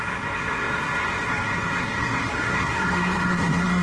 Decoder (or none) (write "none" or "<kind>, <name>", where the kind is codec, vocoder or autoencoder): codec, SNAC